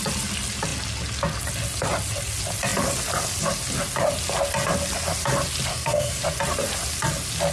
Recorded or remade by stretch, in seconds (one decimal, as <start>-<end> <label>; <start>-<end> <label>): 0.0-5.7 recorded; 5.7-6.2 remade; 6.2-7.5 recorded